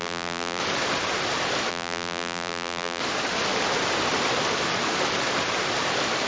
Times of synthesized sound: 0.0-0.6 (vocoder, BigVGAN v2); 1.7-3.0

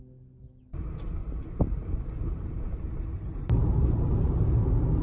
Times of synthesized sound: 1.2-4.0 (vocoder, BigVGAN v2)

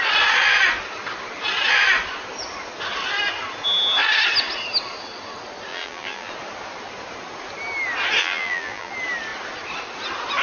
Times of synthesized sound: 5.7-6.3 (vocoder, BigVGAN v2); 8.2-8.9

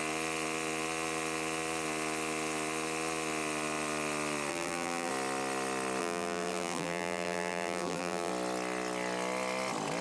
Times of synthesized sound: 4.5-5.1 (vocoder, BigVGAN v2); 6.0-8.3

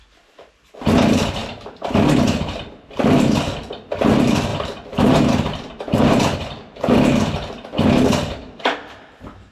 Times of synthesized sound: 1.4-2.0 (vocoder, BigVGAN v2); 4.5-6.2

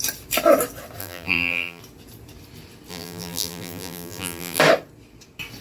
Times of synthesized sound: 1.0-1.8 (vocoder, BigVGAN v2); 2.9-4.6

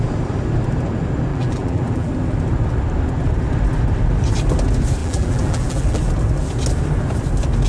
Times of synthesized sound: 1.3-2.1 (vocoder, BigVGAN v2); 5.0-6.0